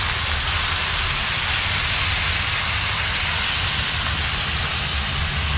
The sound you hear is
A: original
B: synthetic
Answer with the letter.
A